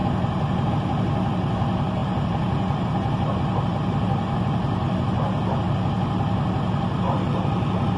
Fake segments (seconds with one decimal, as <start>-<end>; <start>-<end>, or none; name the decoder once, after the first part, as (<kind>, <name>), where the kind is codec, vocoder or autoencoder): 0.0-0.7 (vocoder, BigVGAN v2); 2.0-5.7